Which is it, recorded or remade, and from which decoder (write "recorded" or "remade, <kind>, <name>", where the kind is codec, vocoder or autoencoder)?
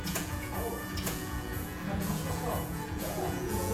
remade, vocoder, Vocos